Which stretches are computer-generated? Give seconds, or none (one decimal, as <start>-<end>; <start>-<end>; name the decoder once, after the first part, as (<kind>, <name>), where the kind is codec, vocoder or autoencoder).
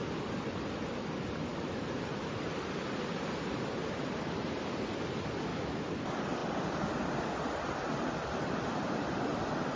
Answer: 5.5-6.0 (autoencoder, DAC-VAE)